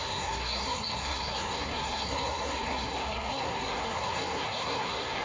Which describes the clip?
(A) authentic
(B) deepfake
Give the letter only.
B